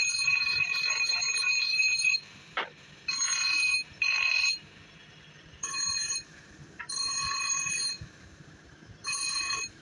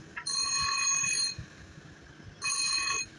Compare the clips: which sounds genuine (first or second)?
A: second